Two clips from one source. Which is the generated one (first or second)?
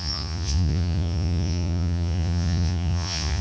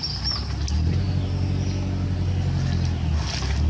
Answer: first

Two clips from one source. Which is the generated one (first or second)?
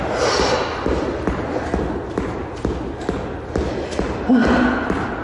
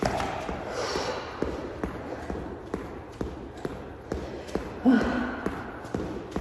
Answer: second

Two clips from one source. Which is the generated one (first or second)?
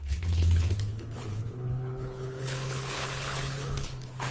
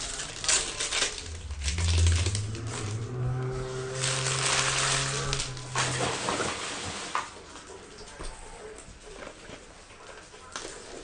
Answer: first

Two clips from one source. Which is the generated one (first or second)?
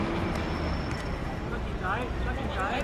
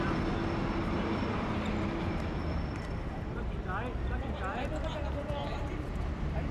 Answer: second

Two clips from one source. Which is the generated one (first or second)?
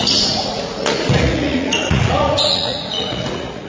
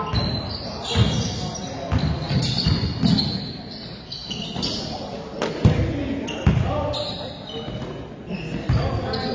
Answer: first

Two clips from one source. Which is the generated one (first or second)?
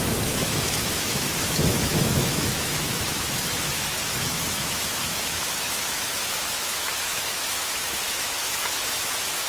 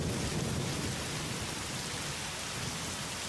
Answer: first